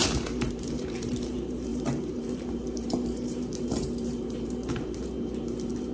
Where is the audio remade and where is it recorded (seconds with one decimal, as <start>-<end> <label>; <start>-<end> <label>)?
0.0-5.9 remade